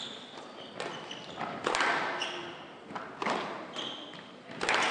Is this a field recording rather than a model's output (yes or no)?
yes